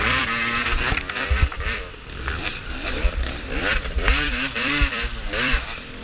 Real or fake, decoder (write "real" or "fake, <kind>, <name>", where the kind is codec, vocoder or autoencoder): fake, vocoder, BigVGAN v2